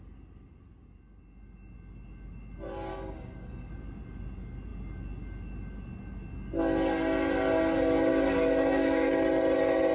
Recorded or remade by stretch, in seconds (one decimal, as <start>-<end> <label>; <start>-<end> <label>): 0.0-2.9 recorded; 2.9-3.7 remade; 3.7-8.1 recorded; 8.1-9.1 remade; 9.1-9.9 recorded